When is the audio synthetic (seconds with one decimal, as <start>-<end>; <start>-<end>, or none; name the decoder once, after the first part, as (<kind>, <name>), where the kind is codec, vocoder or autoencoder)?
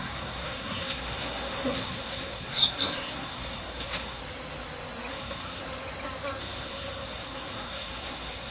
0.0-4.2 (codec, SNAC); 5.1-5.6; 6.4-8.5